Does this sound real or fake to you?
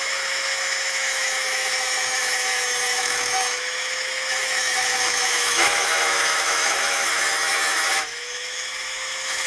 fake